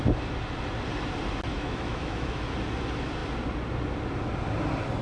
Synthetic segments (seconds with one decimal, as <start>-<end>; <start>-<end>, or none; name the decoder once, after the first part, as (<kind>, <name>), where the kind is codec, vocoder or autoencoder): 1.5-2.4 (autoencoder, DAC-VAE)